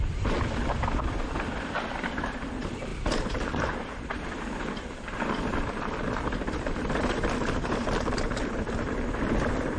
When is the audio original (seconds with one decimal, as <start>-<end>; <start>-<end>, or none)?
2.9-5.6